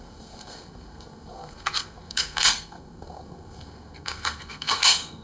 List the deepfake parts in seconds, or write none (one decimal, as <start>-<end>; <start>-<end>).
0.0-5.2